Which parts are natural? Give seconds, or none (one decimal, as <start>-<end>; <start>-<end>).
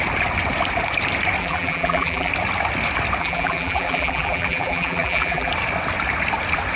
0.0-1.4; 2.3-3.2; 5.5-6.8